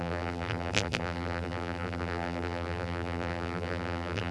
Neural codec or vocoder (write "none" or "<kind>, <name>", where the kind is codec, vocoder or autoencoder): vocoder, BigVGAN v2